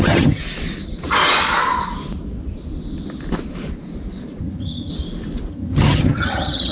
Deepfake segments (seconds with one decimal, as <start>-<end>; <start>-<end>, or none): 0.0-0.4; 4.4-4.9; 5.5-6.7